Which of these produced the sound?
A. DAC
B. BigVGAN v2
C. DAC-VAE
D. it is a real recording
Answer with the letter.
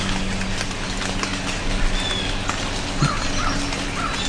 D